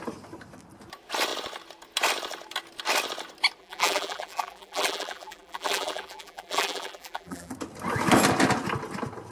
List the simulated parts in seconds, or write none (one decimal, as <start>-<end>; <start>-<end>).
3.6-7.5